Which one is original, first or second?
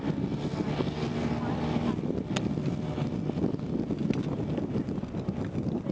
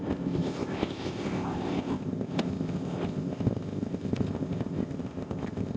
first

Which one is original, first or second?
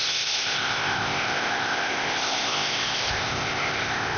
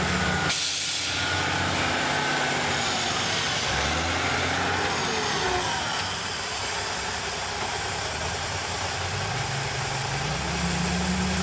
second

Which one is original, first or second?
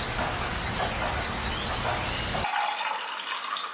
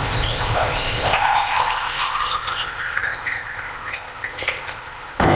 first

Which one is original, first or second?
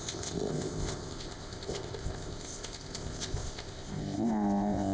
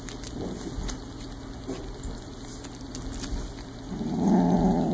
second